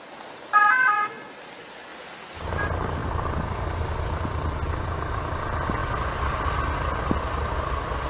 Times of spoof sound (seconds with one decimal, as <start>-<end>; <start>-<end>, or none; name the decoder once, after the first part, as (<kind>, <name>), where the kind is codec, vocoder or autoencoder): none